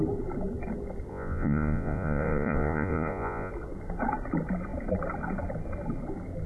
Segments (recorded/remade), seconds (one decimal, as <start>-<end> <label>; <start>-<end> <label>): 0.0-1.1 recorded; 1.1-3.5 remade; 3.5-6.5 recorded